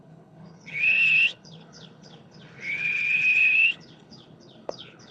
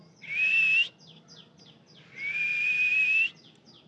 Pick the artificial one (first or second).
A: first